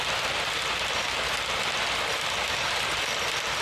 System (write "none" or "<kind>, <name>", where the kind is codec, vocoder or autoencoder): none